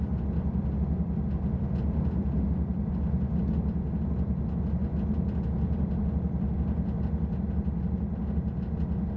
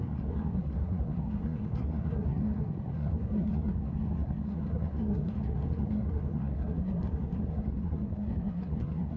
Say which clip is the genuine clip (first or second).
first